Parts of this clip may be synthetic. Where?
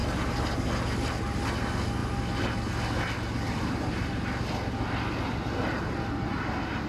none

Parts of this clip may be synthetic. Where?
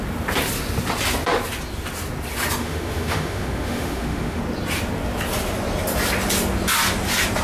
2.6-4.4 (autoencoder, DAC-VAE)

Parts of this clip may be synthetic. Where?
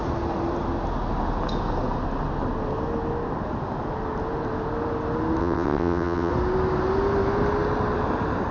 5.4-6.3 (vocoder, WaveNeXt)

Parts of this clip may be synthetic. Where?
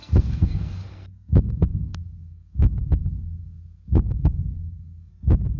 0.0-5.1 (codec, SNAC)